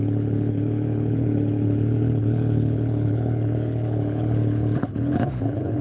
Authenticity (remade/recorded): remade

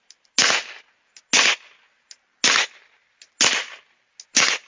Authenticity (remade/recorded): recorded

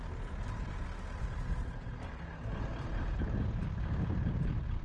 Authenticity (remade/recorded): recorded